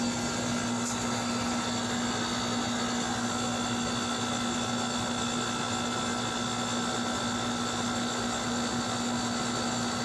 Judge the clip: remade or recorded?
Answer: recorded